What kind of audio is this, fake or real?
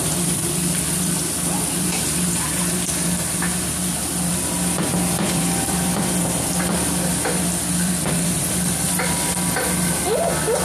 fake